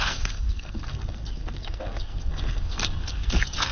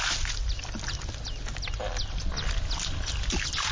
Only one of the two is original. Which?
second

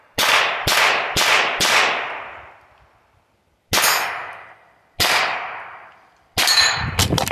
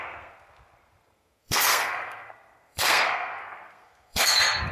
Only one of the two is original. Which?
first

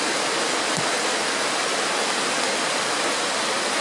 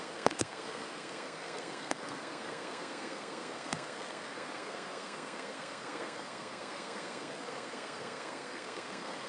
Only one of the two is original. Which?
first